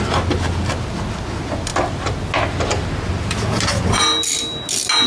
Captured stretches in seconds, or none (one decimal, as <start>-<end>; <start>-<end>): 0.0-5.1